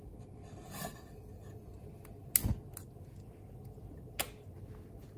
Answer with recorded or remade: recorded